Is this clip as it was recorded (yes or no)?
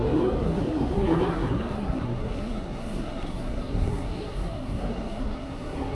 no